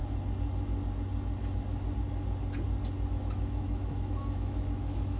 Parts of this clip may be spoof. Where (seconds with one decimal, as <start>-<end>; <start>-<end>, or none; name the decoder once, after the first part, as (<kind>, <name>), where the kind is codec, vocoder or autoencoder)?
3.1-5.2 (autoencoder, DAC-VAE)